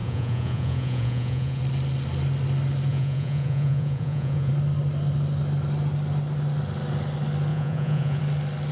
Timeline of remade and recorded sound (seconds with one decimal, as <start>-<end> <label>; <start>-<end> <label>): 0.0-1.6 remade; 1.6-2.9 recorded; 2.9-4.5 remade; 4.5-7.5 recorded; 7.5-8.2 remade; 8.2-8.7 recorded